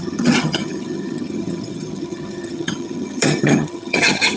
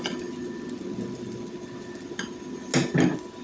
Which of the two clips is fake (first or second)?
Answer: first